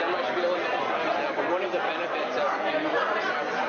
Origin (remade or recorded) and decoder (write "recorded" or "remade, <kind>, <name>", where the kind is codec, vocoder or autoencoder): recorded